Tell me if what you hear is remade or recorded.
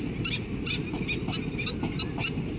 recorded